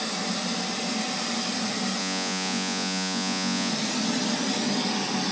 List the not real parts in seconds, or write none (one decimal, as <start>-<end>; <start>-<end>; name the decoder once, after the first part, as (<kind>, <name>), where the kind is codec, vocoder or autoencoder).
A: 2.0-3.7 (vocoder, Vocos)